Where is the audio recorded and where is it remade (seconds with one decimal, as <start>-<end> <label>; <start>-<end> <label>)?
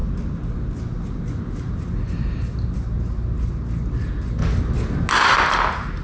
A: 0.0-6.0 recorded